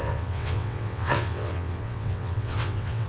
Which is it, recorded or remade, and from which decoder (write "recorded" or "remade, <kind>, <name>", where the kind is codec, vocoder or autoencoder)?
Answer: remade, vocoder, WaveNeXt